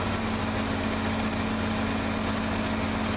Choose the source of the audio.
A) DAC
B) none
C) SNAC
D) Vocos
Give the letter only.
B